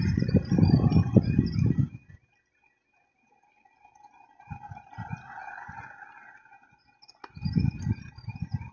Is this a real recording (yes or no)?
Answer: yes